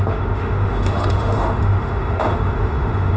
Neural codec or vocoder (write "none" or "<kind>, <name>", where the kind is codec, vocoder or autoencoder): autoencoder, DAC-VAE